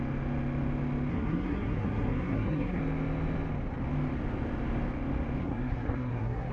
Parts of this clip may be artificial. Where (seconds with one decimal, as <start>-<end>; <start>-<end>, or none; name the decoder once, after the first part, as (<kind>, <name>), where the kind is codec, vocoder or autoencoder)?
1.1-2.8 (codec, SNAC); 5.4-6.5